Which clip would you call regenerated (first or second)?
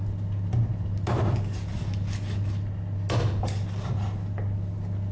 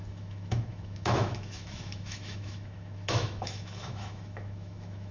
second